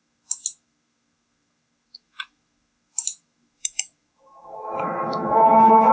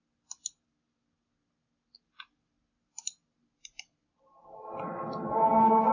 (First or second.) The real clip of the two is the second